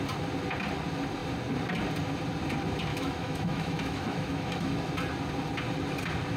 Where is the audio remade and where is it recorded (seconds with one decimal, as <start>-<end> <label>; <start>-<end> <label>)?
0.0-2.9 recorded; 2.9-4.9 remade; 4.9-6.4 recorded